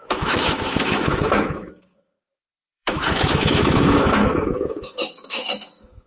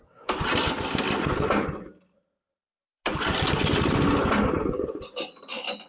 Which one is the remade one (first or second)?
first